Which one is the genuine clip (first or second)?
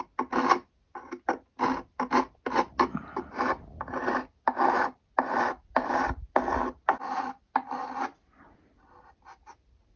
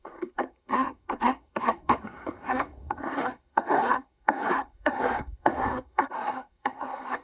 first